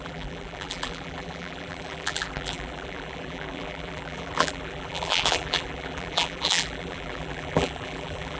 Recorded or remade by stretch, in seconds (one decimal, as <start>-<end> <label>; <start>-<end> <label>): 0.0-8.4 remade